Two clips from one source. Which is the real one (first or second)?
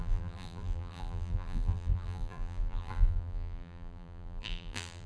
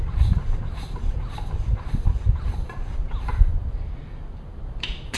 second